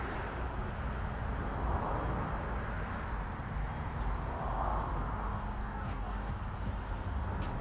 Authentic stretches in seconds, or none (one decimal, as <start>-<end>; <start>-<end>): 0.0-5.6; 6.3-7.6